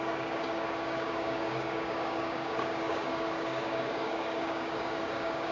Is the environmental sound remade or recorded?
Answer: remade